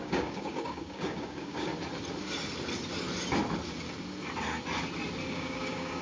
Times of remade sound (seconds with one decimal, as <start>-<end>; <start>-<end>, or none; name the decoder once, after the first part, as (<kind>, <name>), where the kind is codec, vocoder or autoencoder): 0.0-1.7 (codec, DAC); 5.3-6.0